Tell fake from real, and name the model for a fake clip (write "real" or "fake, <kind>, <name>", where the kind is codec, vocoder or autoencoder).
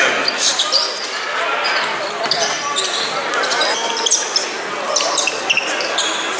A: real